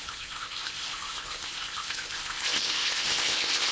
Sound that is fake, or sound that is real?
fake